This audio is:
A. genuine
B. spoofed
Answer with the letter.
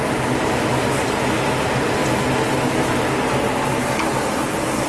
A